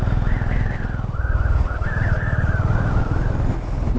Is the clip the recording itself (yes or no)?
yes